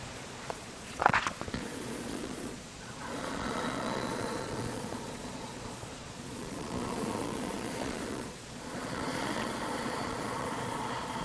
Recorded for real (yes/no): no